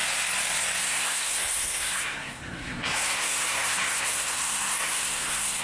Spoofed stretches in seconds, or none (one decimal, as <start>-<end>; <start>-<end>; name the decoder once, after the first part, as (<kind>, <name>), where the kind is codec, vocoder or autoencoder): 0.8-5.6 (codec, SNAC)